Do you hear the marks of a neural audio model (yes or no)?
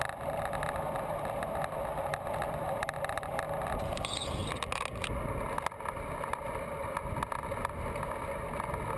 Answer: no